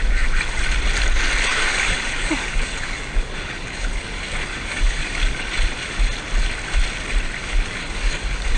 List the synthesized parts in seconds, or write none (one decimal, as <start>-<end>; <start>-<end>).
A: 1.5-5.5; 7.4-8.6